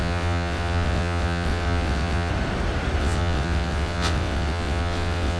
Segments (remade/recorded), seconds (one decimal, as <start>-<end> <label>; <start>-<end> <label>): 0.0-2.3 remade; 2.3-3.0 recorded; 3.0-5.4 remade